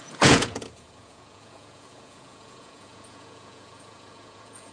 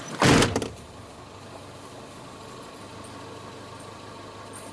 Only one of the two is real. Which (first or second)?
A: second